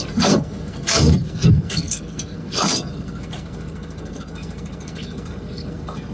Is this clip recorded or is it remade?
remade